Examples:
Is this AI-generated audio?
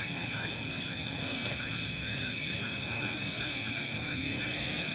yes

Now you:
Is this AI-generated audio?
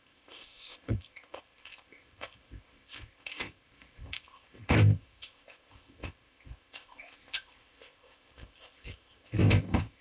yes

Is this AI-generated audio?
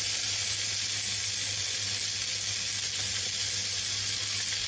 no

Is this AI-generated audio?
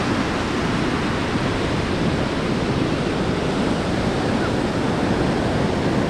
no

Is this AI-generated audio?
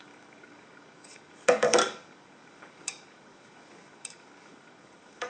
yes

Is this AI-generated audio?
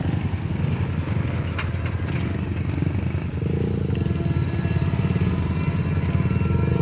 no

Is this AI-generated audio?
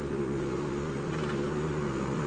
yes